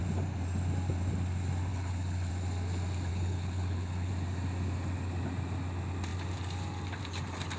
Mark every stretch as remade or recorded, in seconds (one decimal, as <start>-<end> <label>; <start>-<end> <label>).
0.0-1.7 recorded; 1.7-2.3 remade; 2.3-3.1 recorded; 3.1-4.1 remade; 4.1-7.6 recorded